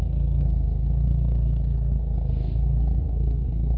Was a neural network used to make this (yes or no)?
yes